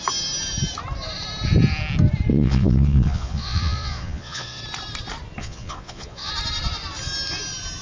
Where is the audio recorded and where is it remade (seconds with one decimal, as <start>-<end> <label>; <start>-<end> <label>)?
0.0-2.3 recorded; 2.3-4.6 remade; 4.6-5.4 recorded; 5.4-6.3 remade; 6.3-7.8 recorded